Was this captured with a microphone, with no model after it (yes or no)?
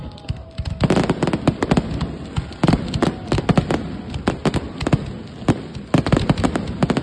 yes